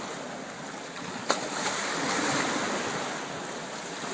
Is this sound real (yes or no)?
yes